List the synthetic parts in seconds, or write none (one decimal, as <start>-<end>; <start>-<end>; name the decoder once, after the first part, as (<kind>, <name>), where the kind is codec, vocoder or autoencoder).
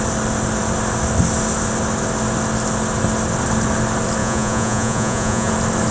4.2-5.5 (vocoder, Vocos)